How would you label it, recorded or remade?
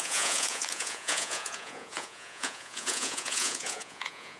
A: remade